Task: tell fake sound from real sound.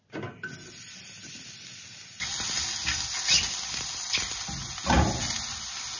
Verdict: real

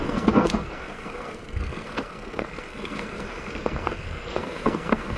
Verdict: fake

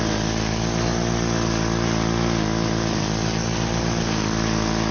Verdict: real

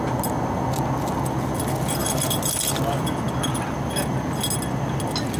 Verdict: real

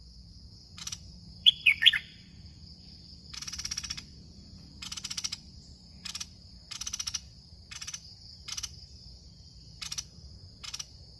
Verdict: fake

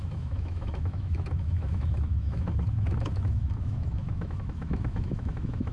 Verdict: fake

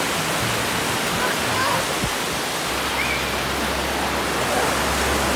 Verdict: real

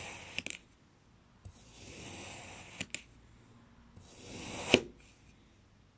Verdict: real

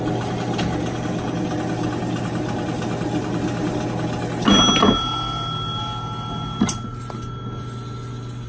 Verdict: real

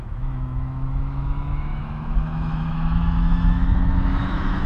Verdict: fake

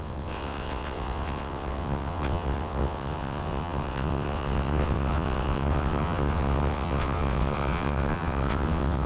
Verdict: fake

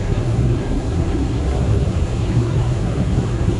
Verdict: fake